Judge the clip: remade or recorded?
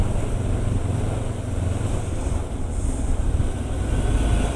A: recorded